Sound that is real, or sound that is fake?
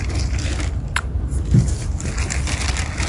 real